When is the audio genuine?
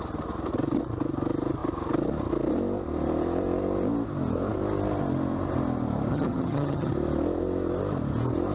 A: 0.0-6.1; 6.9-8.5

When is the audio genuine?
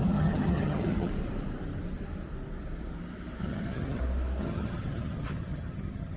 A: 1.1-3.4; 4.0-4.4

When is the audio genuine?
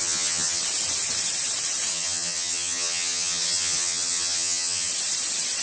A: 0.6-1.9; 4.9-5.6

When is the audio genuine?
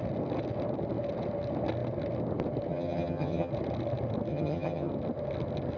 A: 0.0-2.7; 3.5-4.3; 4.9-5.8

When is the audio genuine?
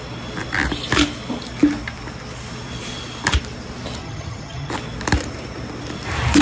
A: 0.0-4.0; 4.7-6.4